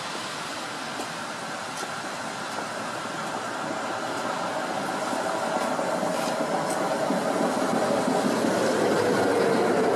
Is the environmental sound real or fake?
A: real